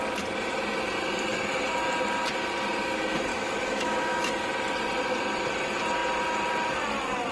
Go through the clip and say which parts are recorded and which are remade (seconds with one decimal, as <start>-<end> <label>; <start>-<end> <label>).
0.0-3.3 recorded; 3.3-4.3 remade; 4.3-7.3 recorded